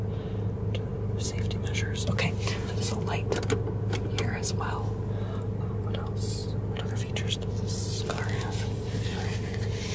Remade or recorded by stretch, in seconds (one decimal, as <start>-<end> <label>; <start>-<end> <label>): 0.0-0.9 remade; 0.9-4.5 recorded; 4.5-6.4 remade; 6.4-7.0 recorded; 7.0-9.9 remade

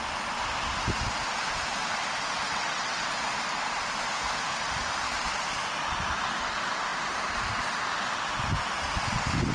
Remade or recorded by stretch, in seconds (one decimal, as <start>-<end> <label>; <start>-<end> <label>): 0.0-2.5 recorded; 2.5-3.1 remade; 3.1-9.5 recorded

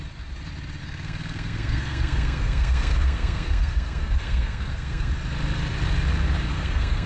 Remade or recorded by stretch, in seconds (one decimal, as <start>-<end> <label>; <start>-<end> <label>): 0.0-0.8 recorded; 0.8-5.1 remade; 5.1-6.5 recorded; 6.5-7.1 remade

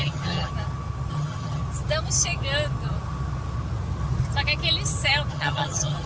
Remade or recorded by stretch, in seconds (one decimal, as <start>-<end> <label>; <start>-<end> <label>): 0.0-0.5 remade; 0.5-1.1 recorded; 1.1-1.6 remade; 1.6-5.3 recorded; 5.3-6.1 remade

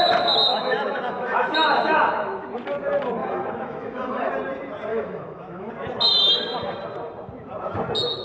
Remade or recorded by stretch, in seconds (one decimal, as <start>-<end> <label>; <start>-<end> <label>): 0.0-0.5 recorded; 0.5-2.5 remade; 2.5-3.2 recorded; 3.2-4.3 remade; 4.3-4.9 recorded; 4.9-5.7 remade; 5.7-8.2 recorded

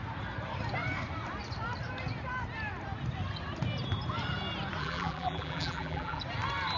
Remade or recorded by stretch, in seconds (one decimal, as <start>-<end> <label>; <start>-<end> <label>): 0.0-4.8 recorded; 4.8-6.2 remade; 6.2-6.8 recorded

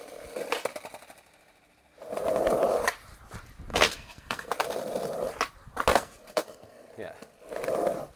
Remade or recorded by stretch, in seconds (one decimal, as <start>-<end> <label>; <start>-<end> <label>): 0.0-3.7 recorded; 3.7-4.5 remade; 4.5-5.9 recorded; 5.9-6.9 remade; 6.9-8.2 recorded

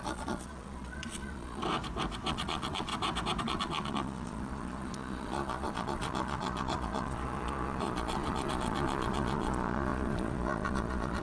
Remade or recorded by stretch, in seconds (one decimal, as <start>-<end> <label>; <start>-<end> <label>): 0.0-1.6 remade; 1.6-2.3 recorded; 2.3-2.9 remade; 2.9-3.4 recorded; 3.4-11.2 remade